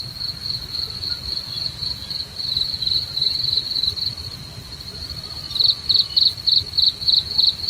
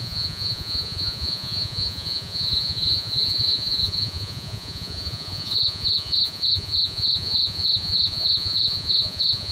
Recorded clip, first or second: first